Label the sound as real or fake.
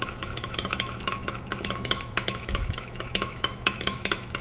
fake